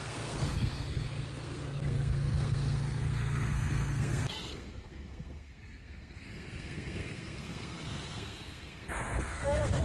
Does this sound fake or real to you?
fake